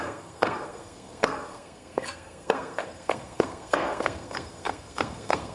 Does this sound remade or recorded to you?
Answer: remade